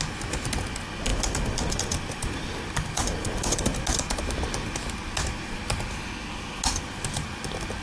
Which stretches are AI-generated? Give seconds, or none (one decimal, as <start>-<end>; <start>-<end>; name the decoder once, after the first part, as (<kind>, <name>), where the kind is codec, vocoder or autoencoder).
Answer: 1.1-3.6 (vocoder, BigVGAN v2)